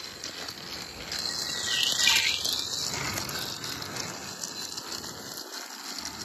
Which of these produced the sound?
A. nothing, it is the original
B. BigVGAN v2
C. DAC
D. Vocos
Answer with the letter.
A